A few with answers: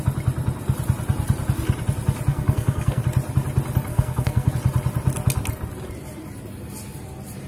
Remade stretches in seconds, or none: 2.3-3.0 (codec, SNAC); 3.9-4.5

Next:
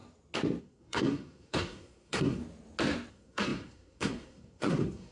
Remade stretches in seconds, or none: 0.6-2.4 (codec, SNAC); 3.1-5.1

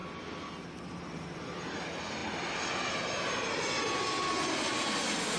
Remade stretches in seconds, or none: none

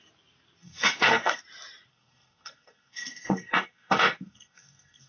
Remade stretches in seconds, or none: 0.6-1.4 (codec, SNAC); 1.9-5.1